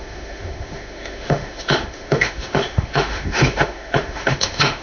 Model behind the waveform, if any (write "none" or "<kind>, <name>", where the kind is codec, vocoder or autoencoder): autoencoder, DAC-VAE